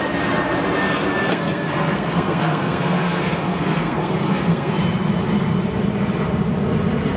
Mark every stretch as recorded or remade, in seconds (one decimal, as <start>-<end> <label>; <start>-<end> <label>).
0.0-1.3 recorded; 1.3-4.7 remade; 4.7-7.2 recorded